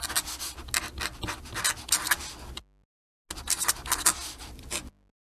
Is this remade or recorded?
recorded